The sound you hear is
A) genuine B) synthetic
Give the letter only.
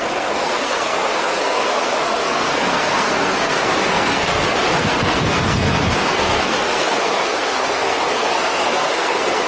B